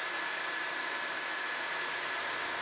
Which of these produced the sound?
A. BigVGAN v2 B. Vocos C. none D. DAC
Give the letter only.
C